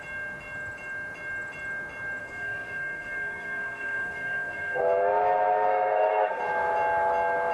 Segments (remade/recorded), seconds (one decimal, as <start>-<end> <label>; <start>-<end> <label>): 0.0-2.2 recorded; 2.2-4.8 remade; 4.8-5.7 recorded; 5.7-6.4 remade; 6.4-7.5 recorded